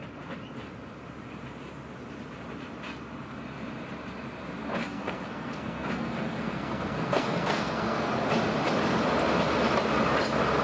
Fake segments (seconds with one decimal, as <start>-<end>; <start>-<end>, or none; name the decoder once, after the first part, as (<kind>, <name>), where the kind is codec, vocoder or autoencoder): 4.8-8.1 (codec, SNAC)